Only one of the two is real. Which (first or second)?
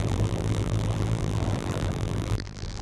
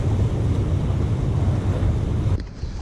second